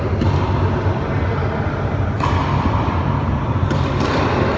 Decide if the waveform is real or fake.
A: fake